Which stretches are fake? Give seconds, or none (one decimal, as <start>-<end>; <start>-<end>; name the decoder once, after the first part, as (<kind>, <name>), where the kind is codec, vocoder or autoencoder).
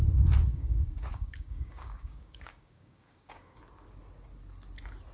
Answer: 0.5-3.6 (codec, DAC)